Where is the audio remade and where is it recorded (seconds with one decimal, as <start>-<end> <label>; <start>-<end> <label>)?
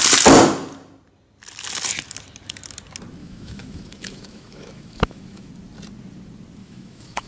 0.0-3.2 recorded; 3.2-5.5 remade; 5.5-6.6 recorded; 6.6-7.3 remade